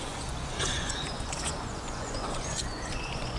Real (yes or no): no